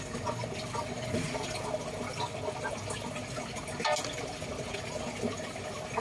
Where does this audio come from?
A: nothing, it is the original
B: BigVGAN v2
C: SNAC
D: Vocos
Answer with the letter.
A